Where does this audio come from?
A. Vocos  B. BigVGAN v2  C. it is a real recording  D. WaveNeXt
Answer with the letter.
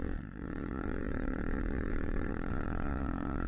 D